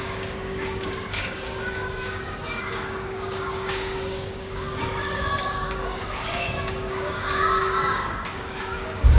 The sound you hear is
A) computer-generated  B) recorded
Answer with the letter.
A